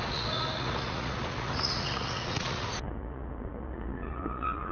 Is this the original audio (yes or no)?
no